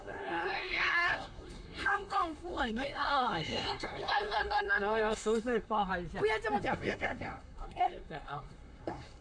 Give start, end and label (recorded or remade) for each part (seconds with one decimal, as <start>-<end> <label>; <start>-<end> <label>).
0.0-5.9 remade; 5.9-6.6 recorded; 6.6-9.2 remade